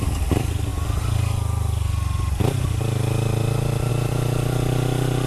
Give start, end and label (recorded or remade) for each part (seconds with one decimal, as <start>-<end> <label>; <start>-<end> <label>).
0.0-5.3 recorded